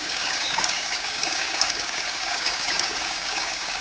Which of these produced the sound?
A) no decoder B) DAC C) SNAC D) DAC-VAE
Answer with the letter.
B